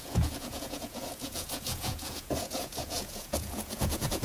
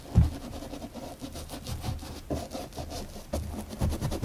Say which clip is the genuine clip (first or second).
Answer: second